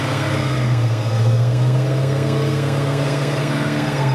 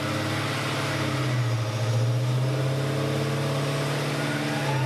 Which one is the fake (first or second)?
first